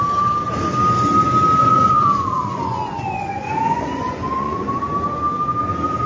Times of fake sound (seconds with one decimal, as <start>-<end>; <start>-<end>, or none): 1.6-4.8